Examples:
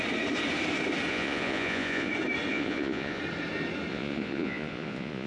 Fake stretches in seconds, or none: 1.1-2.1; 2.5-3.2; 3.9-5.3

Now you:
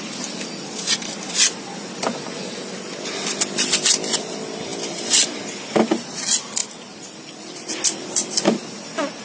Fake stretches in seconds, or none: 4.7-5.4

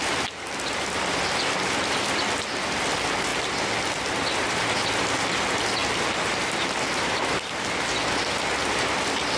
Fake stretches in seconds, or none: none

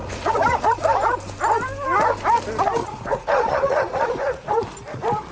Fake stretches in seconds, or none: 0.0-0.8; 2.8-4.5

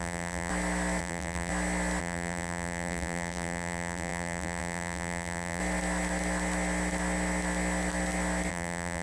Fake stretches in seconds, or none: 0.0-0.5; 1.0-1.5; 2.0-5.6; 8.5-9.0

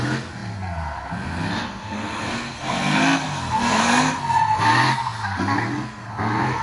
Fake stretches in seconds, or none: 0.0-6.6